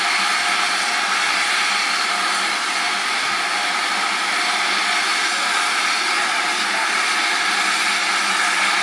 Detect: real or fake real